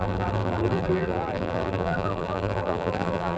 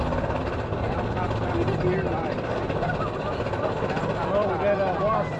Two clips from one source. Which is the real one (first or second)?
second